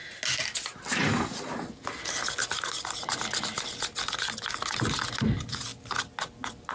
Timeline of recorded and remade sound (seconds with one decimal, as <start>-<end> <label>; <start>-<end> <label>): 0.0-6.7 recorded

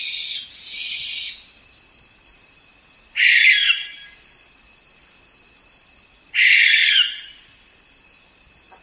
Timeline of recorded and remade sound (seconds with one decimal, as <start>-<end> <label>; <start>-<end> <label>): 0.0-8.8 recorded